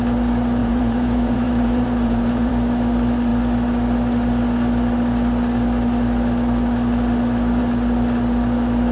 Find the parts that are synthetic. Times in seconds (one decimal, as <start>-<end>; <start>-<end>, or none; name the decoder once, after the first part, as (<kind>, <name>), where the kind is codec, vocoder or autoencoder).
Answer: 0.6-2.5 (vocoder, Vocos)